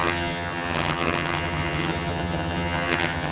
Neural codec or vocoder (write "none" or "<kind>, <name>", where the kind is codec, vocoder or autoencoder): vocoder, HiFi-GAN